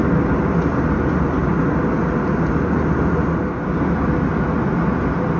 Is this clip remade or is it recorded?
recorded